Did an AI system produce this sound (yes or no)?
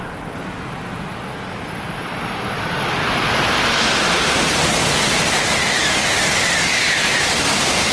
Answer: no